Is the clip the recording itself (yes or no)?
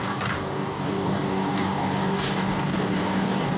no